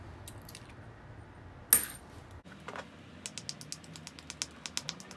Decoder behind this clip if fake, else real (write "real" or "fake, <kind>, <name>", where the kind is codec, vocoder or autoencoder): real